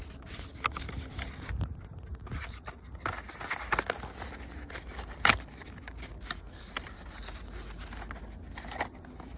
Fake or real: real